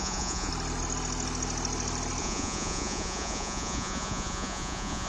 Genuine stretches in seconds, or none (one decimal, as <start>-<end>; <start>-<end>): 0.5-2.2